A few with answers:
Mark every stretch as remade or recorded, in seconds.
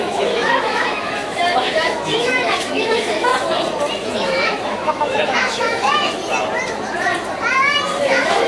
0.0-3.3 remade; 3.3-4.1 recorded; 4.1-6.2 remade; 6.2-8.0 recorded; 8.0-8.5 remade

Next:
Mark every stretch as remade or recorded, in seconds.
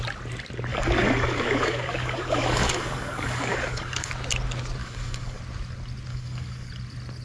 0.0-0.7 recorded; 0.7-4.1 remade; 4.1-4.8 recorded; 4.8-5.4 remade; 5.4-6.1 recorded; 6.1-6.7 remade; 6.7-7.2 recorded